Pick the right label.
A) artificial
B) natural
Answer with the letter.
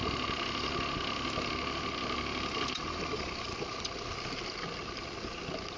B